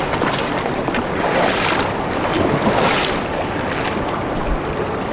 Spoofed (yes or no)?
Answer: no